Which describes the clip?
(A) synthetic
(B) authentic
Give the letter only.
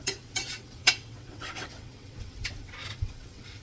A